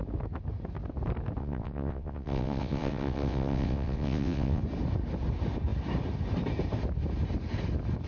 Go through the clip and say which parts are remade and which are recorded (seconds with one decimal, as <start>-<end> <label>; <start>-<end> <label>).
0.0-1.4 recorded; 1.4-4.6 remade; 4.6-8.1 recorded